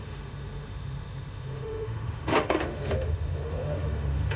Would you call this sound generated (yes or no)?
yes